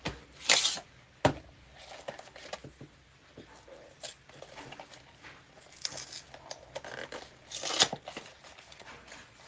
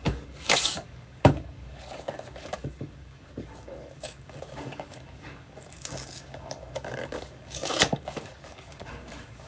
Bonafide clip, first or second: first